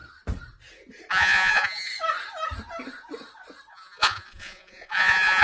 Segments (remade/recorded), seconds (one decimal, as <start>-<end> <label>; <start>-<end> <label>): 0.0-1.1 recorded; 1.1-1.9 remade; 1.9-3.7 recorded; 3.7-5.4 remade